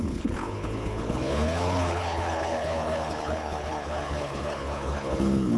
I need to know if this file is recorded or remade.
remade